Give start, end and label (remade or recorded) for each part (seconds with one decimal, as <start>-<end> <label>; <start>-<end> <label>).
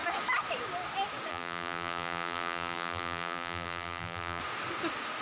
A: 0.0-1.3 recorded; 1.3-4.4 remade; 4.4-5.2 recorded